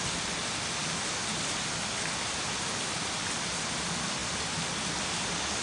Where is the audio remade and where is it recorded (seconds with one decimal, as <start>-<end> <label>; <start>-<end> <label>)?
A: 0.0-5.6 recorded